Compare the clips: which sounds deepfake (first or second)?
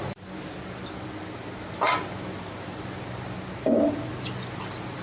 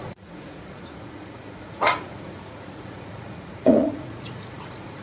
second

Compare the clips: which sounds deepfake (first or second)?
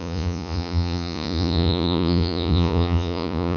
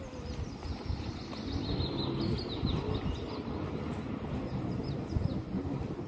first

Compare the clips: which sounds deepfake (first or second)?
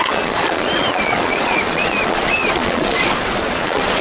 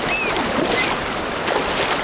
first